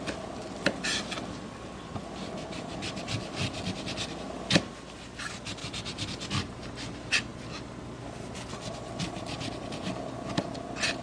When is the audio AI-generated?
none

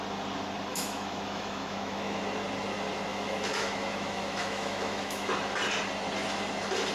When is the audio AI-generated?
0.7-2.2 (autoencoder, DAC-VAE); 3.1-5.3

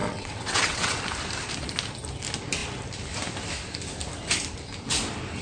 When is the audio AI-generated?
0.0-1.0 (vocoder, WaveNeXt)

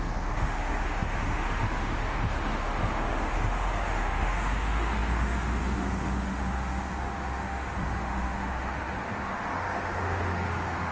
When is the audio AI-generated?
0.0-10.9 (autoencoder, DAC-VAE)

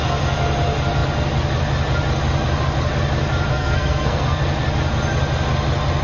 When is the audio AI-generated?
3.5-4.4 (codec, SNAC)